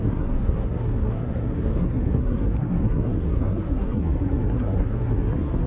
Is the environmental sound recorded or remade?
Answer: remade